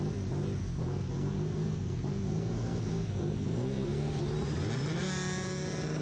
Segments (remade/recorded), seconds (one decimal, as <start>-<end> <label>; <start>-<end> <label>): 0.0-0.6 recorded; 0.6-4.2 remade; 4.2-6.0 recorded